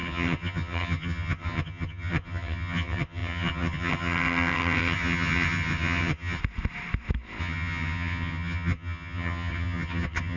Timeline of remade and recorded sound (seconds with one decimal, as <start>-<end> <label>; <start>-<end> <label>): 0.0-6.4 remade; 6.4-7.4 recorded; 7.4-10.4 remade